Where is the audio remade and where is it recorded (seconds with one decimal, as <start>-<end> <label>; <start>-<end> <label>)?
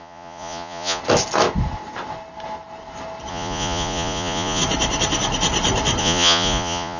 0.0-1.0 remade; 1.0-3.3 recorded; 3.3-4.6 remade; 4.6-6.0 recorded; 6.0-7.0 remade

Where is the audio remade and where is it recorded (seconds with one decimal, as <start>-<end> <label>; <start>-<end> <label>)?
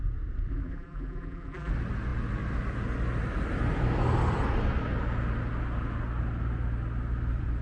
0.0-0.5 recorded; 0.5-1.7 remade; 1.7-7.6 recorded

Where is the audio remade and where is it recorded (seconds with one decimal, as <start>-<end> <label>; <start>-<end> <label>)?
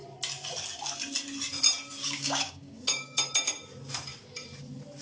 0.0-2.0 recorded; 2.0-3.2 remade; 3.2-5.0 recorded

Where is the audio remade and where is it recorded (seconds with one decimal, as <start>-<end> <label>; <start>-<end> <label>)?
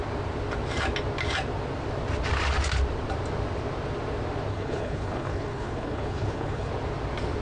0.0-4.5 recorded; 4.5-6.7 remade; 6.7-7.4 recorded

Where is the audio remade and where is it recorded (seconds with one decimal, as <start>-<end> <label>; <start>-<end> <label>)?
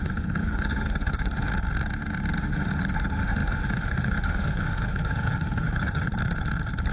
0.0-1.5 remade; 1.5-2.4 recorded; 2.4-6.1 remade; 6.1-6.9 recorded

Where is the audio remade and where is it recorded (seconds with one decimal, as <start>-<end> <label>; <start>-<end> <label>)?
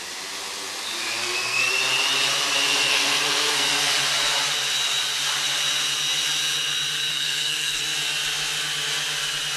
0.0-1.2 recorded; 1.2-1.7 remade; 1.7-2.9 recorded; 2.9-3.9 remade; 3.9-7.1 recorded; 7.1-7.8 remade; 7.8-9.6 recorded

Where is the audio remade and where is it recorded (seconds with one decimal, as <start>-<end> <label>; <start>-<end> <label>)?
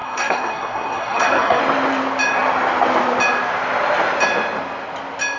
0.0-1.6 remade; 1.6-5.4 recorded